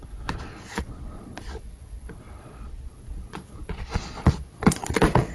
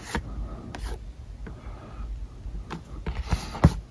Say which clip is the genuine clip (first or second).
second